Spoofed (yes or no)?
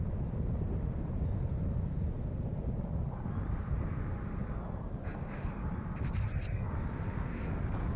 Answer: no